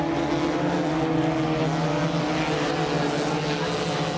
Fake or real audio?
real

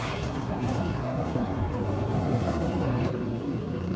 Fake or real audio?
fake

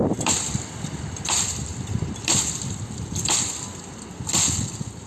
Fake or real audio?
real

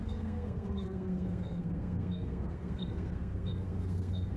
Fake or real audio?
fake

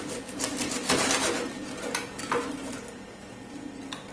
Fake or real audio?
real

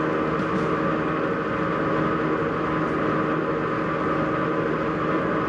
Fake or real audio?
real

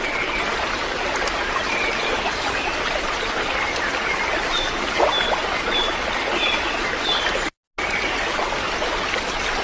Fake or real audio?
real